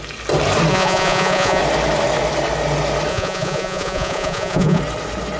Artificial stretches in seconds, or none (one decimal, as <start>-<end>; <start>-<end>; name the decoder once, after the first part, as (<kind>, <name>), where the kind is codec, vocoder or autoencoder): 0.7-1.6 (vocoder, Vocos); 3.1-4.8